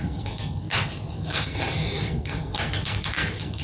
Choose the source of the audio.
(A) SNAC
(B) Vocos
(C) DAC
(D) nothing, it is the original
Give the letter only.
A